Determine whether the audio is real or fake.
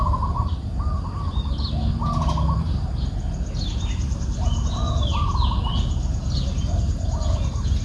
real